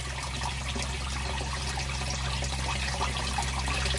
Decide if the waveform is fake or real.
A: real